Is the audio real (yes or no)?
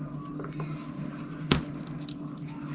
yes